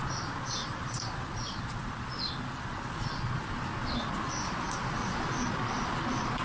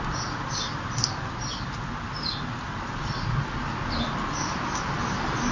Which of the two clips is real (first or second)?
second